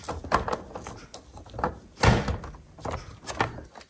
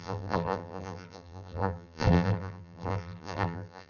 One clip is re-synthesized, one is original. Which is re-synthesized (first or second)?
second